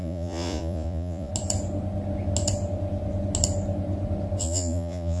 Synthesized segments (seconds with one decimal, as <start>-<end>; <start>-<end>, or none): 0.0-1.3; 4.4-5.2